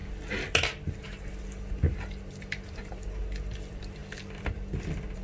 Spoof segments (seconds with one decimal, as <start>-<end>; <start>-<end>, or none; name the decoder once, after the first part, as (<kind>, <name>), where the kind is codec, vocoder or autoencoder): 1.4-5.2 (vocoder, BigVGAN v2)